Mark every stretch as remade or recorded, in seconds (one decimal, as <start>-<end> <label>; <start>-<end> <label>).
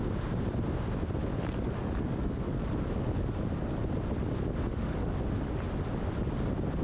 0.0-1.3 recorded; 1.3-3.8 remade; 3.8-4.7 recorded; 4.7-5.2 remade; 5.2-6.8 recorded